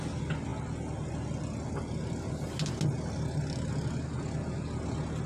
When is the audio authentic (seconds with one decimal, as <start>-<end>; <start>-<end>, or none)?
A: 0.0-5.3